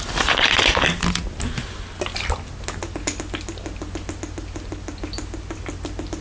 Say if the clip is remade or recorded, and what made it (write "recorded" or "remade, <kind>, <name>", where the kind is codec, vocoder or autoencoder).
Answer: recorded